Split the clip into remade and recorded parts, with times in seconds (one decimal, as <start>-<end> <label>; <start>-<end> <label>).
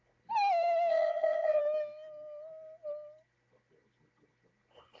0.0-0.9 recorded; 0.9-1.6 remade; 1.6-5.0 recorded